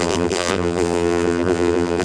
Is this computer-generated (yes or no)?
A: yes